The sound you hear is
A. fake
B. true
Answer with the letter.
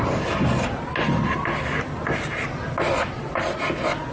B